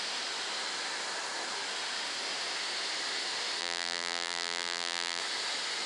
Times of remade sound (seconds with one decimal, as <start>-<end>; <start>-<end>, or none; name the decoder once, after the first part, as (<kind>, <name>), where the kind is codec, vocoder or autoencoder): 3.6-5.2 (vocoder, BigVGAN v2)